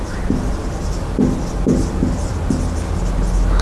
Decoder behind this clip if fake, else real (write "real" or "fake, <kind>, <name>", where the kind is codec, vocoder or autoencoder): real